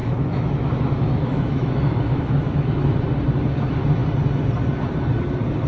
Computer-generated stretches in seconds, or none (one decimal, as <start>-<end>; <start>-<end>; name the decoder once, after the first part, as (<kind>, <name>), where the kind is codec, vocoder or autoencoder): 0.0-3.0 (autoencoder, DAC-VAE)